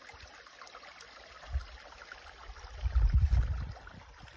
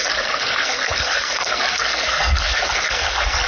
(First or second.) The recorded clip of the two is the first